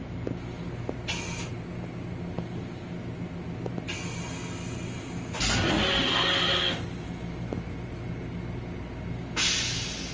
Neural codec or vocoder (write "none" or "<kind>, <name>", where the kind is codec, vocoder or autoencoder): none